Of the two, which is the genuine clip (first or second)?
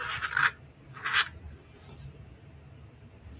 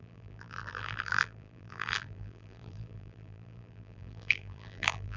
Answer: first